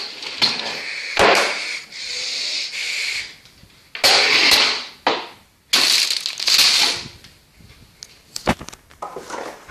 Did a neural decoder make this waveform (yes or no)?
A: no